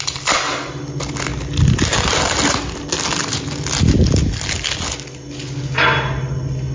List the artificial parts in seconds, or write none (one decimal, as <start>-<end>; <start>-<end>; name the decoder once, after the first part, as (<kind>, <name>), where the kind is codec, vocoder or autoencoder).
none